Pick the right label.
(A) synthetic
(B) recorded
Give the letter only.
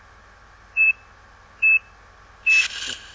B